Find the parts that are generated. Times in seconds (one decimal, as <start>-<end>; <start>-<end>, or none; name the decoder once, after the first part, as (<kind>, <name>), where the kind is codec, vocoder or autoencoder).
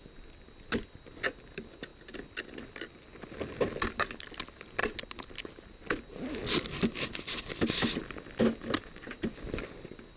none